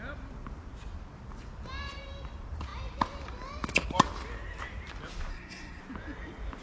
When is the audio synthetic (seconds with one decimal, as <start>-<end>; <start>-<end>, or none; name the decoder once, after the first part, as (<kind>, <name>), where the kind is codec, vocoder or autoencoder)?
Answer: 5.3-5.8 (codec, SNAC)